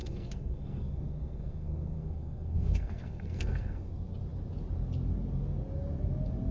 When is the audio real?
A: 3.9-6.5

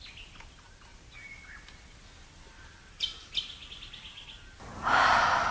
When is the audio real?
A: 0.0-5.5

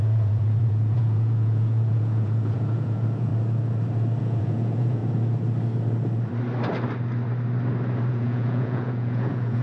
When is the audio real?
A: 3.3-4.2; 5.0-8.1